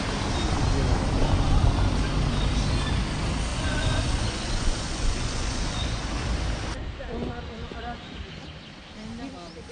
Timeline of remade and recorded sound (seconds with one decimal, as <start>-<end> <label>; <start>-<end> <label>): 0.0-3.5 recorded; 3.5-6.0 remade; 6.0-9.7 recorded